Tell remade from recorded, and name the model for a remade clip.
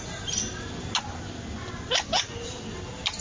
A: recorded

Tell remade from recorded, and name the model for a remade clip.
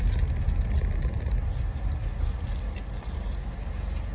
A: recorded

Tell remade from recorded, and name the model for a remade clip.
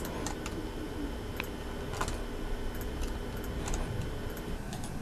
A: recorded